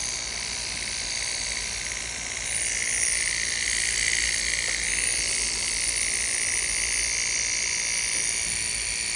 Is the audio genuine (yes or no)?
yes